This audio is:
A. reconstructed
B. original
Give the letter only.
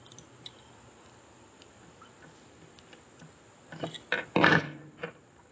B